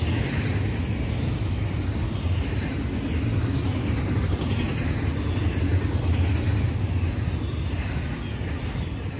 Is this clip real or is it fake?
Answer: real